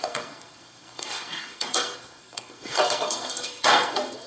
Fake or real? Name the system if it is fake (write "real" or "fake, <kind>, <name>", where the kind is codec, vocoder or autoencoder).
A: fake, codec, SNAC